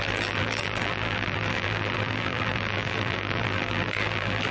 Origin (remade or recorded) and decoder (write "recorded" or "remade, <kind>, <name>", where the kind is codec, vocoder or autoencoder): remade, vocoder, BigVGAN v2